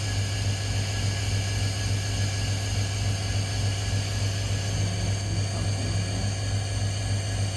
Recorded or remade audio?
recorded